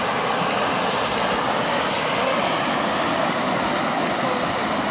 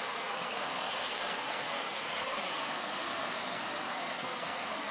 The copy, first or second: second